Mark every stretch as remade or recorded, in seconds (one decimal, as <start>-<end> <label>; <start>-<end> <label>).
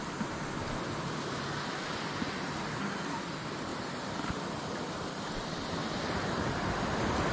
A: 0.0-7.3 recorded